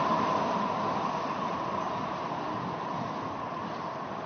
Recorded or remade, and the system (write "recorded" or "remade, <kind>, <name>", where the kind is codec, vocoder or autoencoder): recorded